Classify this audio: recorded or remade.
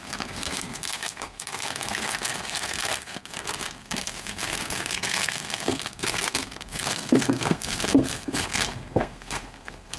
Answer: remade